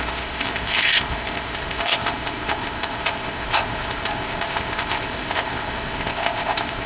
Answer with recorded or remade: remade